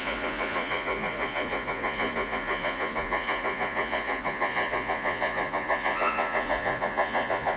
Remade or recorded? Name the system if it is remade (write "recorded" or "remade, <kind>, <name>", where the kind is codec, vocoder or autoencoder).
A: remade, vocoder, Vocos